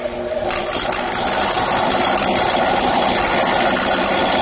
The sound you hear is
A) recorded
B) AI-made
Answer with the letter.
A